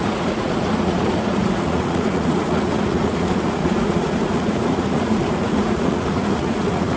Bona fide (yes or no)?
no